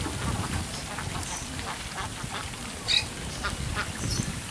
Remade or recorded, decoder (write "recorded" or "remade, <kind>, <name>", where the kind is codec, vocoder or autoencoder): recorded